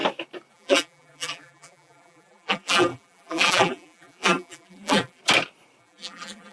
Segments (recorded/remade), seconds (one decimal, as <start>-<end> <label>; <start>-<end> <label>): 0.0-0.5 recorded; 0.5-5.2 remade; 5.2-5.8 recorded; 5.8-6.5 remade